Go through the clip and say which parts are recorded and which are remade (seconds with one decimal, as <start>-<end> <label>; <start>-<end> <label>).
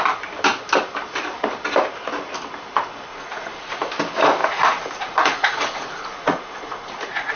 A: 0.0-3.1 recorded; 3.1-3.9 remade; 3.9-4.4 recorded; 4.4-7.4 remade